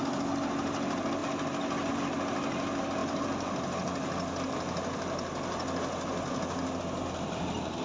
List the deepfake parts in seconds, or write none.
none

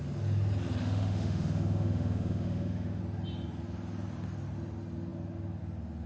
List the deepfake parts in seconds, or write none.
0.8-3.0 (autoencoder, DAC-VAE)